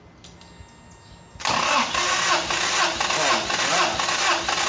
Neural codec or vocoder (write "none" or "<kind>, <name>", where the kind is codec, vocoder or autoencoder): none